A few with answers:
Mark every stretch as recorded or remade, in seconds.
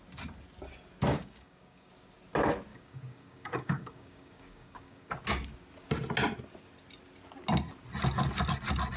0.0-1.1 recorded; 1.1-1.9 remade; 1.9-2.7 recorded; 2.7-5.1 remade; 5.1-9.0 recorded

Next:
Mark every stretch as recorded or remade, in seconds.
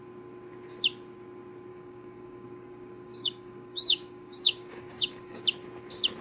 0.0-1.7 recorded; 1.7-5.4 remade; 5.4-6.2 recorded